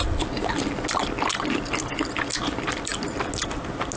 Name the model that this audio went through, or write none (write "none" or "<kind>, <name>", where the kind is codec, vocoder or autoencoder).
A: none